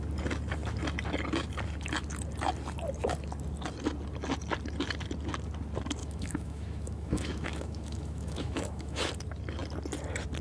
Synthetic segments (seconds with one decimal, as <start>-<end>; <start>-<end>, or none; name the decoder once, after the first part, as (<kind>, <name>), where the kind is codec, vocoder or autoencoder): 6.0-9.1 (autoencoder, DAC-VAE)